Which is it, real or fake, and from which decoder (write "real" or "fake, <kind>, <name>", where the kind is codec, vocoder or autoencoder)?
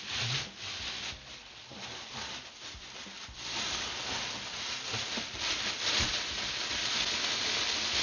real